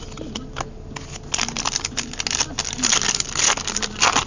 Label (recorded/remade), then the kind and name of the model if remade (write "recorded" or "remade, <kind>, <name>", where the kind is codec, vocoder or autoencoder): recorded